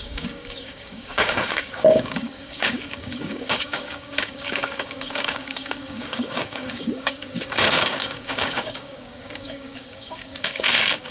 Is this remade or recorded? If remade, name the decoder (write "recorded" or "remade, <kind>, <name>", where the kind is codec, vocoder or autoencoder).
remade, codec, DAC